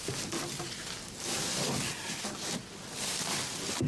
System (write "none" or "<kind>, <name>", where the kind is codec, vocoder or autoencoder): none